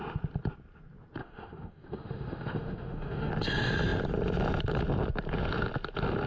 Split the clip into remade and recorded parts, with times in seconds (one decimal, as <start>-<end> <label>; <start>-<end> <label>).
0.0-1.2 recorded; 1.2-3.3 remade; 3.3-6.3 recorded